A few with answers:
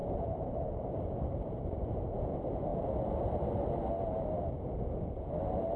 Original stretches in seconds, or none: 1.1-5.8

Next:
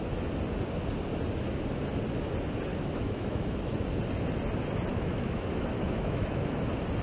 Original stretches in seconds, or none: 0.0-2.7; 3.6-4.9; 6.6-7.0